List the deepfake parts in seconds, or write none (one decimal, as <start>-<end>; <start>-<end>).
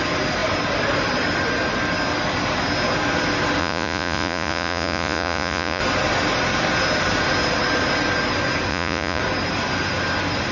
3.6-5.8; 8.7-9.2